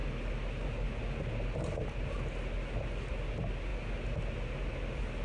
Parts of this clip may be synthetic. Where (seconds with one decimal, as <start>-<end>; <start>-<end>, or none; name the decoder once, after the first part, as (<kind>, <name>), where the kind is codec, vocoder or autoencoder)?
none